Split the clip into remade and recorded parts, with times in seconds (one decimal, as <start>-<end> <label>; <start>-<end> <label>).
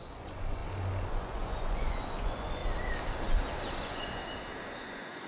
0.0-0.6 remade; 0.6-1.1 recorded; 1.1-2.6 remade; 2.6-3.8 recorded; 3.8-4.2 remade; 4.2-4.8 recorded; 4.8-5.3 remade